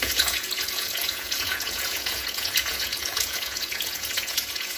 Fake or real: fake